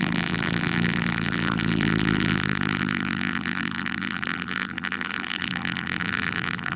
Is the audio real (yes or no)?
no